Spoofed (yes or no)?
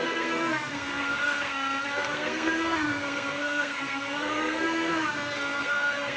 yes